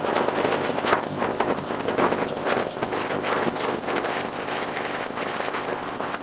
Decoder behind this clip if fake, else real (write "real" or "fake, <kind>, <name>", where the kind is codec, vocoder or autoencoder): fake, codec, ZipCodec